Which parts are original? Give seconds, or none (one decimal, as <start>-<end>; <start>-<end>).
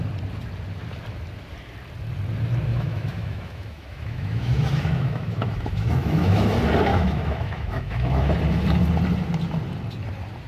0.0-2.7; 6.5-6.9; 8.3-10.5